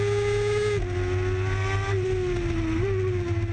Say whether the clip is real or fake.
real